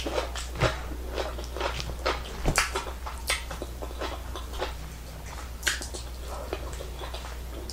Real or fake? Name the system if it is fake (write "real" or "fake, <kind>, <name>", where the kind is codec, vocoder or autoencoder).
real